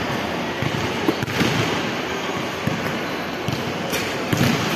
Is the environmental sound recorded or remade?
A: recorded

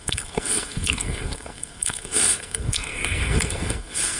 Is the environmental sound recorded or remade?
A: remade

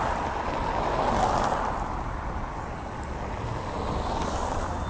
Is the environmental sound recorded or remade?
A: recorded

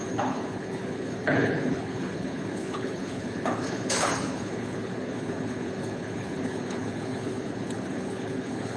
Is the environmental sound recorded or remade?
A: remade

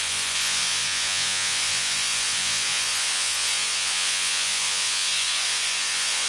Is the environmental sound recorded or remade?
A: remade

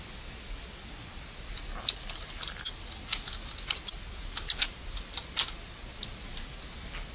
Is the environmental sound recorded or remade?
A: recorded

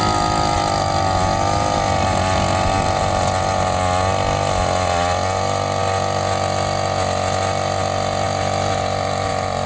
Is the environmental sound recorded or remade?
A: recorded